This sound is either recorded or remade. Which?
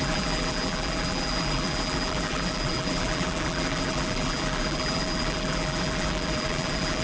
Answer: remade